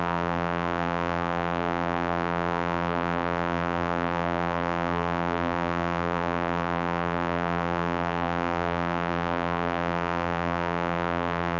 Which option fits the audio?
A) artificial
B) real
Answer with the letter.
A